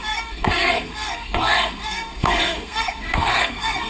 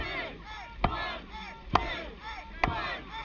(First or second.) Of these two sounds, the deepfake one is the first